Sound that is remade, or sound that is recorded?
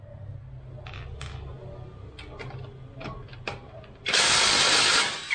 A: recorded